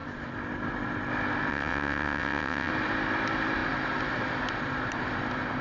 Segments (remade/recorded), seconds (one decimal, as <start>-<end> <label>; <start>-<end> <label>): 0.0-1.5 recorded; 1.5-2.7 remade; 2.7-5.6 recorded